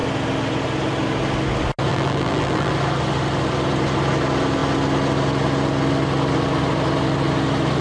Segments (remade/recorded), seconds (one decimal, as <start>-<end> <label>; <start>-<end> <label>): 0.0-1.9 recorded; 1.9-2.7 remade; 2.7-7.8 recorded